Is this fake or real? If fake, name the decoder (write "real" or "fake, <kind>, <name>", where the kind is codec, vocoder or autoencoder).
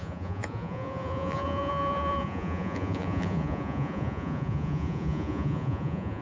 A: fake, vocoder, Vocos